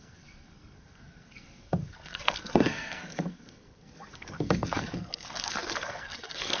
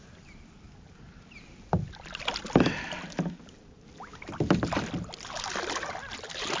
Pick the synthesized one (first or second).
first